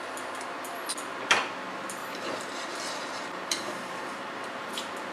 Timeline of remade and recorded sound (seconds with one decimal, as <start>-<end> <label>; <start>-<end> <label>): 0.0-2.0 recorded; 2.0-5.1 remade